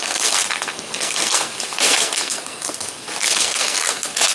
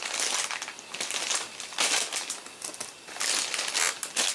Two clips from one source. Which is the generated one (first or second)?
first